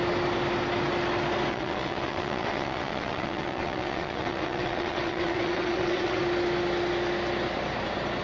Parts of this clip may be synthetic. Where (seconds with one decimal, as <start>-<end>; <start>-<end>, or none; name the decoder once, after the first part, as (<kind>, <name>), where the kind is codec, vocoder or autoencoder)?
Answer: 1.5-6.2 (vocoder, WaveNeXt)